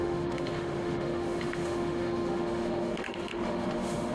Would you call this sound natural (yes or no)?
no